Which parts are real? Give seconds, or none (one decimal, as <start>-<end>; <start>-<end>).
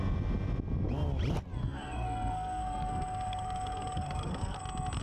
0.0-1.6; 4.6-5.0